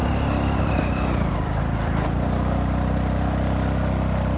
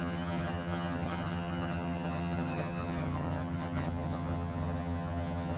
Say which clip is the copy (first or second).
second